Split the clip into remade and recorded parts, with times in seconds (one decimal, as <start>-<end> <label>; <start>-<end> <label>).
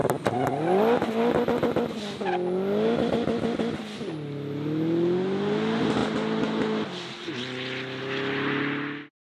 0.0-9.4 recorded